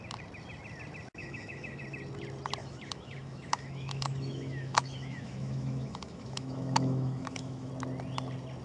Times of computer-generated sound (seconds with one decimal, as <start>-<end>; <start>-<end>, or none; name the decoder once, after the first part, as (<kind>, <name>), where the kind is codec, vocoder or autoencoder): 1.2-1.8 (autoencoder, DAC-VAE); 2.6-7.7

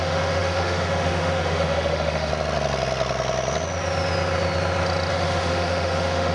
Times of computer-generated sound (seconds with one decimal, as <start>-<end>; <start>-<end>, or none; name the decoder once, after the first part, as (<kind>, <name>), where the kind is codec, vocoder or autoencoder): 0.0-2.3 (autoencoder, DAC-VAE); 5.1-6.3

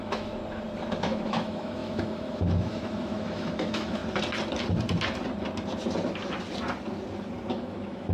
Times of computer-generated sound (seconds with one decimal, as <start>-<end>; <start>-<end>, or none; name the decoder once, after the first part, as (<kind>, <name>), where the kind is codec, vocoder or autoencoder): 0.0-0.4 (autoencoder, DAC-VAE); 1.0-4.0; 7.5-8.1

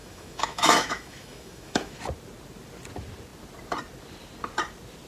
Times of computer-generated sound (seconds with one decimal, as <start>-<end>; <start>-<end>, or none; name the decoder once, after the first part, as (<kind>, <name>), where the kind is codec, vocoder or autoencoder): 0.0-2.0 (autoencoder, DAC-VAE)

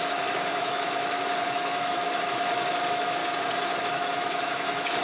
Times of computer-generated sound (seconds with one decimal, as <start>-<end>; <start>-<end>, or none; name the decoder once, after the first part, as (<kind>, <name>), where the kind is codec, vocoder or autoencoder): 0.0-3.2 (autoencoder, DAC-VAE); 3.8-5.0

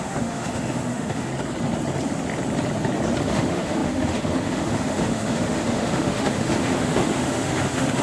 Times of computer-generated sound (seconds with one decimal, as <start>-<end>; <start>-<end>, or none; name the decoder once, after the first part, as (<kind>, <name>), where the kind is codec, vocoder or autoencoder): 0.0-1.3 (autoencoder, DAC-VAE); 3.2-8.0